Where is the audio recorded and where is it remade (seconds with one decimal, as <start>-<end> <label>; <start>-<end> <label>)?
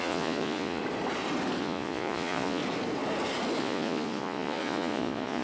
0.0-0.8 remade; 0.8-1.6 recorded; 1.6-2.6 remade; 2.6-3.6 recorded; 3.6-5.4 remade